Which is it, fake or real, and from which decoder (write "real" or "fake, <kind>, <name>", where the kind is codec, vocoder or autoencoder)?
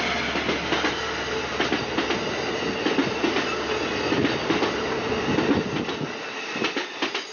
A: real